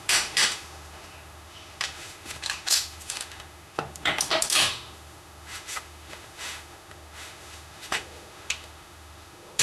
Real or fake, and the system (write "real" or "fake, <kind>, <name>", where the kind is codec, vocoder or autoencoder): fake, autoencoder, DAC-VAE